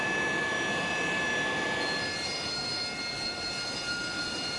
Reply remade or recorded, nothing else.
recorded